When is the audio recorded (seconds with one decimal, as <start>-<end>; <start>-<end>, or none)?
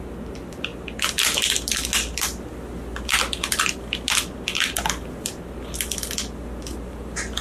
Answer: 0.0-7.4